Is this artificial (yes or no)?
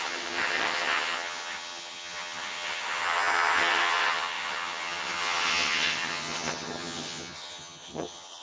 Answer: yes